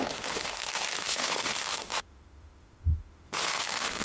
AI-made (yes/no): yes